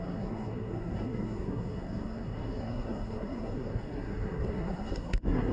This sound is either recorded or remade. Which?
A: remade